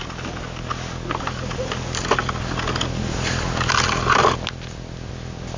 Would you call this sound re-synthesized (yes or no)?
no